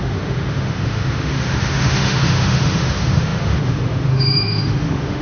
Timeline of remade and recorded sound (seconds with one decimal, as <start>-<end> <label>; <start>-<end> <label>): 0.0-5.2 remade